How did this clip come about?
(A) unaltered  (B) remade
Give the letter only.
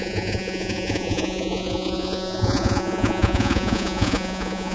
B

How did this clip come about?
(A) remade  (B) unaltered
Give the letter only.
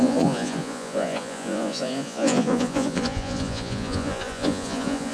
A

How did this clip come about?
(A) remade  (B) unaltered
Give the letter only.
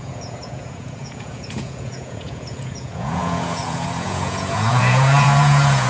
A